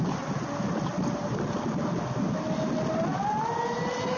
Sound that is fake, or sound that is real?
real